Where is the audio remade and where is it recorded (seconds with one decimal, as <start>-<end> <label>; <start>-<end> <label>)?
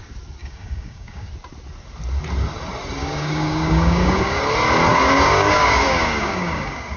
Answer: 0.0-0.4 recorded; 0.4-1.3 remade; 1.3-3.0 recorded; 3.0-4.4 remade; 4.4-4.9 recorded; 4.9-7.0 remade